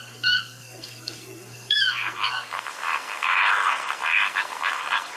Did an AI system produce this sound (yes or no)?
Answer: yes